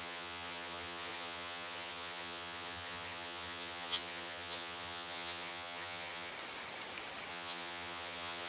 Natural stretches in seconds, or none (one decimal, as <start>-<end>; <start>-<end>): 6.3-7.3